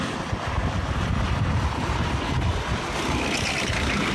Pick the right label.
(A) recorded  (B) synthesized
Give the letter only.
A